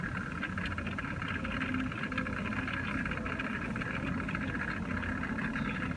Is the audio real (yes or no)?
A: yes